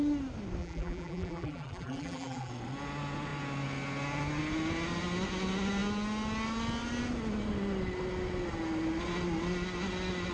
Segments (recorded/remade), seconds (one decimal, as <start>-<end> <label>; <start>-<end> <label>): 0.0-0.6 recorded; 0.6-2.5 remade; 2.5-10.3 recorded